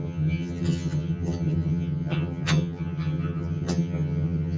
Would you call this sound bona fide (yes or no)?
no